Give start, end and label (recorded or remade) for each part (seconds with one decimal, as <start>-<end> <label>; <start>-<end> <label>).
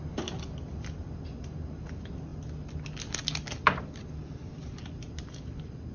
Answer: 0.0-5.9 recorded